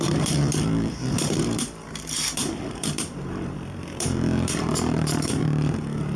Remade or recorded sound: remade